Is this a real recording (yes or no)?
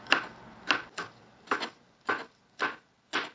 yes